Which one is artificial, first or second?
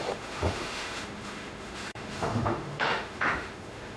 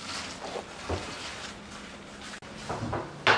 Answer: first